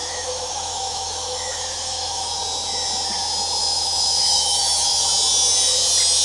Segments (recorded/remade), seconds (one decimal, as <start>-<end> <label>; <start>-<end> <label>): 0.0-2.4 remade; 2.4-3.6 recorded; 3.6-5.0 remade; 5.0-6.2 recorded